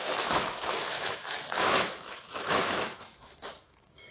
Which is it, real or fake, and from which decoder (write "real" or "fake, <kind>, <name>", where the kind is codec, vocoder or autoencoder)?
fake, autoencoder, DAC-VAE